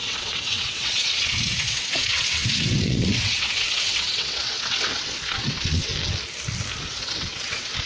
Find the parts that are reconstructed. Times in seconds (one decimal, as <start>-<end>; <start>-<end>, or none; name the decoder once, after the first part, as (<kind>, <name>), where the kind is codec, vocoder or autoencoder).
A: 0.0-5.9 (vocoder, WaveNeXt); 6.8-7.9